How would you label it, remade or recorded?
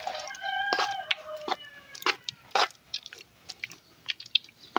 remade